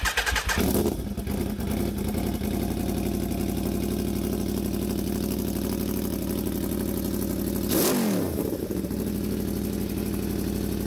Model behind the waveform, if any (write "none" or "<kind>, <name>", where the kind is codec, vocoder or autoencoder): none